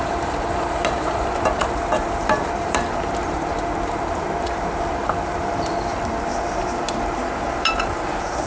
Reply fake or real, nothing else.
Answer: fake